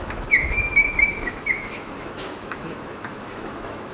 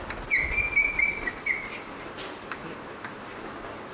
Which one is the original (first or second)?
second